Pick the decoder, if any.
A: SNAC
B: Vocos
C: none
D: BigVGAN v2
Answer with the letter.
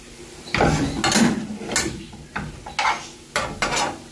C